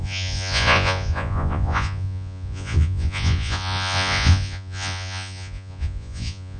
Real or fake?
fake